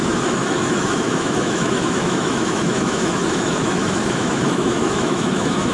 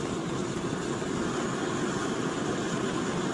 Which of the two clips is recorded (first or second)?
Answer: second